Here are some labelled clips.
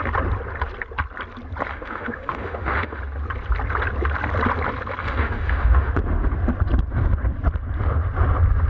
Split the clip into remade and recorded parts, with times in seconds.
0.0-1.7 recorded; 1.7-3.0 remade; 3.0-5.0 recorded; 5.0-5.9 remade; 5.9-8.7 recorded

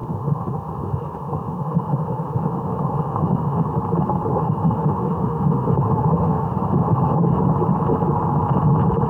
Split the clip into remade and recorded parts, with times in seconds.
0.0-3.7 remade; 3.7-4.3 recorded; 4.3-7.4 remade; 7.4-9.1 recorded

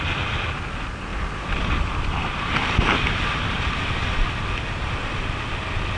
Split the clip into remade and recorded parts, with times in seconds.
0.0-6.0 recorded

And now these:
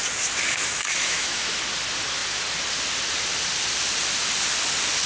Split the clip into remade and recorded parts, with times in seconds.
0.0-0.6 recorded; 0.6-1.6 remade; 1.6-5.1 recorded